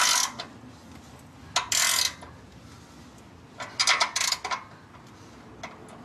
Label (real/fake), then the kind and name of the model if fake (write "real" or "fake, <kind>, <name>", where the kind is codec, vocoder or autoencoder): real